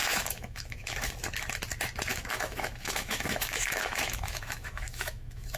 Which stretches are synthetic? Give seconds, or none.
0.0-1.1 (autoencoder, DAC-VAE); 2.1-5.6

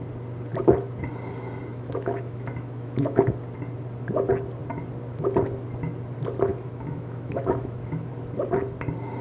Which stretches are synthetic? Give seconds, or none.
1.7-3.3 (autoencoder, DAC-VAE); 6.5-8.1

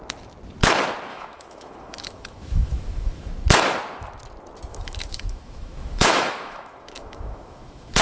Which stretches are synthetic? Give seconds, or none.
1.1-3.3 (autoencoder, DAC-VAE); 4.7-8.0

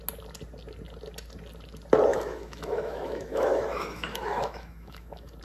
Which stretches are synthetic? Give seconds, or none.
2.1-5.4 (autoencoder, DAC-VAE)

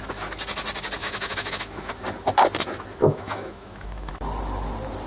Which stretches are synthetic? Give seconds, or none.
1.0-1.9 (autoencoder, DAC-VAE); 3.0-4.1

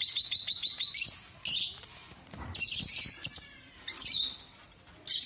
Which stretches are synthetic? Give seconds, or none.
none

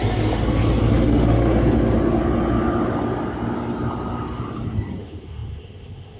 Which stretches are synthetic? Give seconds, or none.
0.9-1.5 (autoencoder, DAC-VAE); 5.0-6.2

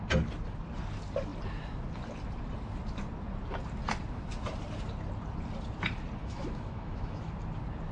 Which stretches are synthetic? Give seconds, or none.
6.2-7.3 (autoencoder, DAC-VAE)